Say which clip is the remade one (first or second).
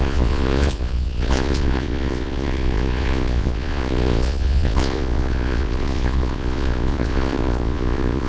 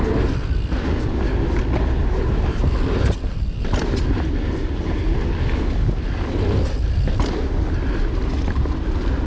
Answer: first